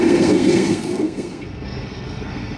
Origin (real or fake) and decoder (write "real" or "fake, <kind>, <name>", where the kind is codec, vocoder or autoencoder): fake, codec, SNAC